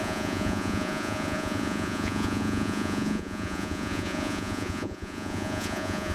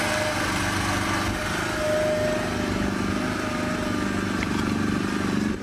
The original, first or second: second